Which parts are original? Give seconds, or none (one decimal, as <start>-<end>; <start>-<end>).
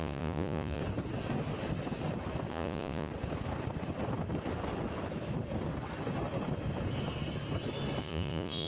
0.8-2.5; 3.1-8.0